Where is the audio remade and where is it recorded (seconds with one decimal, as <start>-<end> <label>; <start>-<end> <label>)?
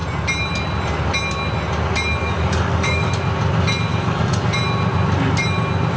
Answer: 0.0-2.2 recorded; 2.2-3.1 remade; 3.1-3.9 recorded; 3.9-4.4 remade; 4.4-6.0 recorded